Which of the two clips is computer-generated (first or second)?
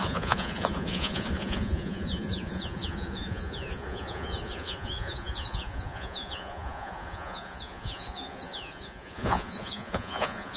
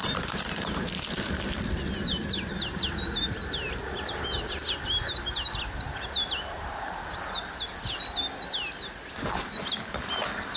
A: first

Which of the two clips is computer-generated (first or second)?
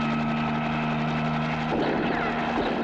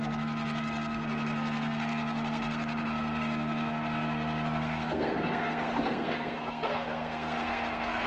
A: second